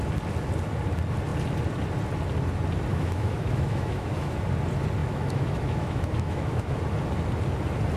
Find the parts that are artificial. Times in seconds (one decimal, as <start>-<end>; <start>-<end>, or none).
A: 2.9-4.4; 5.0-6.8